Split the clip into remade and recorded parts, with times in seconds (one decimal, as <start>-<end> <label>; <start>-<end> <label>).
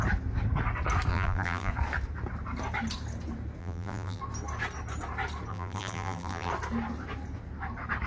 0.0-1.1 recorded; 1.1-1.7 remade; 1.7-3.6 recorded; 3.6-4.2 remade; 4.2-5.5 recorded; 5.5-6.5 remade; 6.5-8.1 recorded